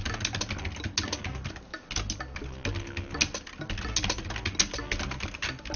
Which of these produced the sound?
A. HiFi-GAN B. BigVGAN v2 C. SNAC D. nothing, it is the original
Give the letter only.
D